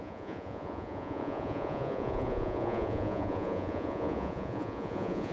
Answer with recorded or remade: remade